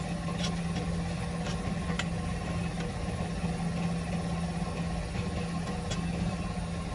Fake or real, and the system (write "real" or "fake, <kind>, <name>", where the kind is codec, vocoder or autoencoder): real